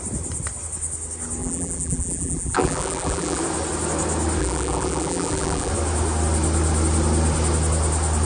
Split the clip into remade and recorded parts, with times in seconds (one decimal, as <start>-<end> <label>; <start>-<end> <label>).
0.0-1.4 recorded; 1.4-3.4 remade; 3.4-4.4 recorded; 4.4-5.7 remade; 5.7-8.3 recorded